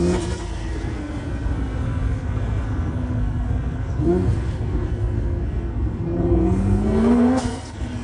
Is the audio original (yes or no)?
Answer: no